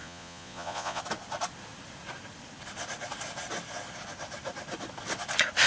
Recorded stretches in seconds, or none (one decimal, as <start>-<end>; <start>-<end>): 1.0-5.7